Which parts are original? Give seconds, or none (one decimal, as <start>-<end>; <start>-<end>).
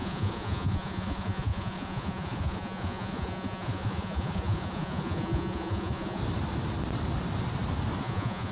6.2-8.0